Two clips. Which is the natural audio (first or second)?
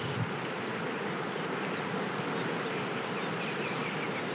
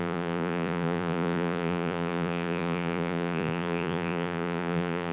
first